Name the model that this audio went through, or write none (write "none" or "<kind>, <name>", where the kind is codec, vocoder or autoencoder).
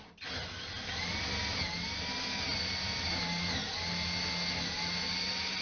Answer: none